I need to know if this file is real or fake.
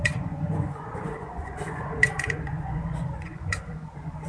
fake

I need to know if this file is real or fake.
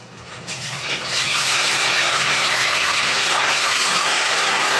fake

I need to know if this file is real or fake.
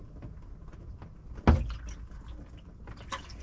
real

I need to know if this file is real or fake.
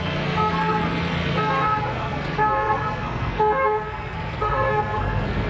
fake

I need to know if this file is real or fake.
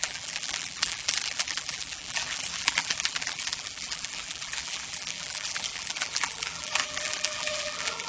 fake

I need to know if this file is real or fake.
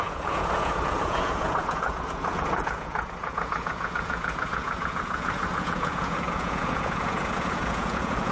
fake